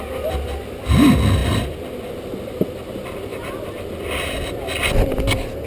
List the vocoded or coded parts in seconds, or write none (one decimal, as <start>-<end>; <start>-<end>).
none